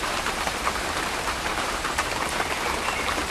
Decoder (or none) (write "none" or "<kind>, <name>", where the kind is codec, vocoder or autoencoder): vocoder, BigVGAN v2